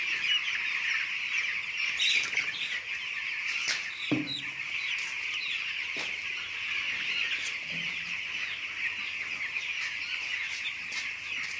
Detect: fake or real real